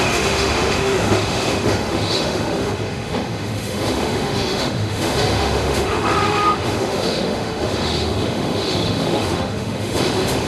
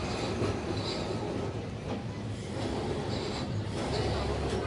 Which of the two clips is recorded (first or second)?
second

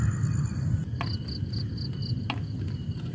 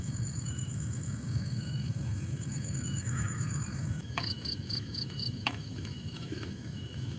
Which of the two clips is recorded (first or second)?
first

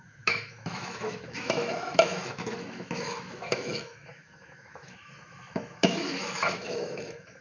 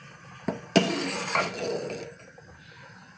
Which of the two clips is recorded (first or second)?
second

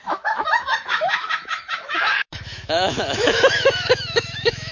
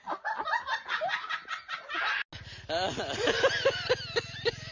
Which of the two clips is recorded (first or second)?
second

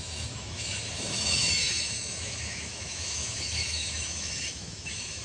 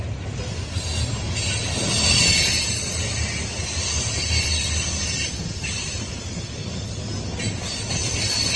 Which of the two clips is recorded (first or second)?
second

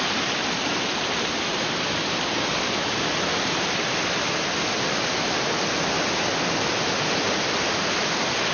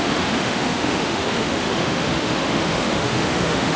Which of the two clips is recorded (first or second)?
first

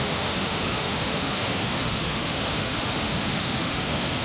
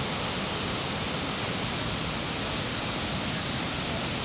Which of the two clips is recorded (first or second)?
second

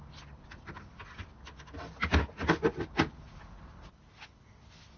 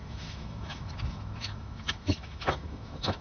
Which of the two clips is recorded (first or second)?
first